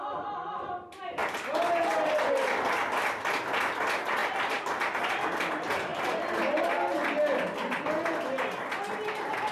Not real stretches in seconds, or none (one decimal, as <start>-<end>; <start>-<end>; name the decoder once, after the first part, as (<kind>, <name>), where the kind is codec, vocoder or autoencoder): none